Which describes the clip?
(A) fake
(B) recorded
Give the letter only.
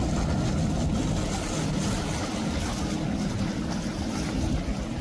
B